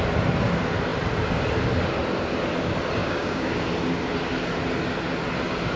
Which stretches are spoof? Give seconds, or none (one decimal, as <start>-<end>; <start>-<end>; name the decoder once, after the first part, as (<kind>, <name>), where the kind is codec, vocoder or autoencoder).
3.0-3.5 (codec, DAC)